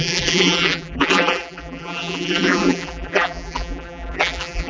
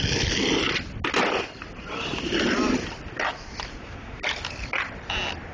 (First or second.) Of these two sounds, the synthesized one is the first